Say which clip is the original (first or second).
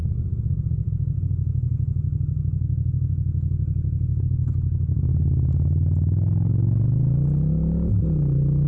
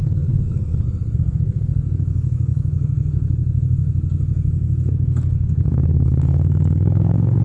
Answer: first